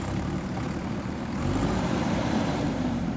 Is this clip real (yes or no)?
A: no